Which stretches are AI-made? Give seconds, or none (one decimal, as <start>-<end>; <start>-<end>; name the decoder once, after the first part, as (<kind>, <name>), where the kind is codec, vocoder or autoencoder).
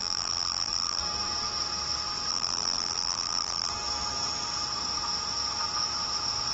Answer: 0.0-1.0 (vocoder, BigVGAN v2); 2.3-3.7